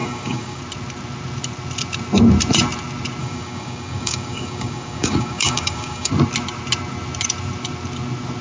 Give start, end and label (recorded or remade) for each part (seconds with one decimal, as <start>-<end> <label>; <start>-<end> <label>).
0.0-0.6 remade; 0.6-3.2 recorded; 3.2-6.1 remade; 6.1-8.4 recorded